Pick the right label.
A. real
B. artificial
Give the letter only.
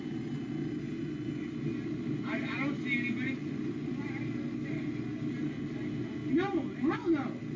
A